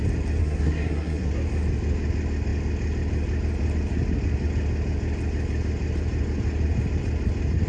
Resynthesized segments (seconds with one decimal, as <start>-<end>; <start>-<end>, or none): 0.4-1.3